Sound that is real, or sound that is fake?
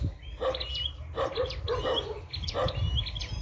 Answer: real